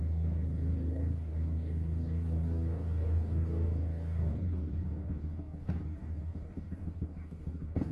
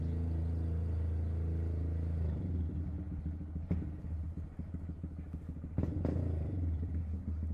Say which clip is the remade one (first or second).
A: first